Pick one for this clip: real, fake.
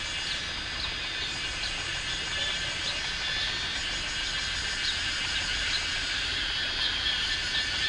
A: real